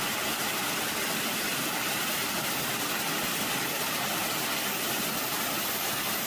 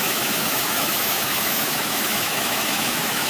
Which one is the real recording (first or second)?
first